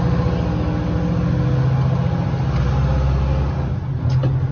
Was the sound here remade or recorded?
recorded